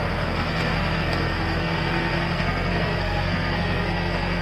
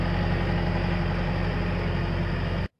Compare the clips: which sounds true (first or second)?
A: second